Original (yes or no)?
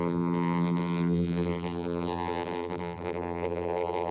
no